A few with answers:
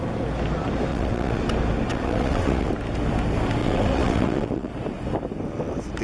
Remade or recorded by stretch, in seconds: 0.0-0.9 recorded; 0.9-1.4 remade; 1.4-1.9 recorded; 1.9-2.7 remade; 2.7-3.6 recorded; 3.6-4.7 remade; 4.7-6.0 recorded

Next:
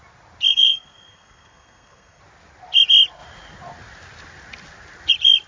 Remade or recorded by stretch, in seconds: 0.0-0.5 recorded; 0.5-2.2 remade; 2.2-5.5 recorded

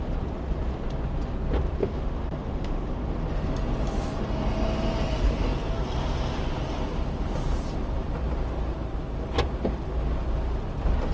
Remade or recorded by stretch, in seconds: 0.0-1.8 recorded; 1.8-2.9 remade; 2.9-11.1 recorded

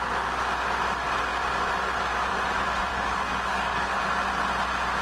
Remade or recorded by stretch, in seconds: 0.0-2.9 recorded; 2.9-4.0 remade; 4.0-5.0 recorded

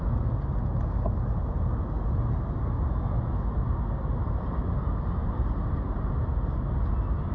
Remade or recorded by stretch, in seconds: 0.0-5.2 recorded; 5.2-6.0 remade; 6.0-7.3 recorded

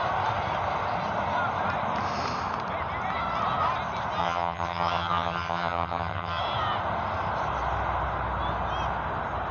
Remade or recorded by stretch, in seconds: 0.0-4.2 recorded; 4.2-6.4 remade; 6.4-9.5 recorded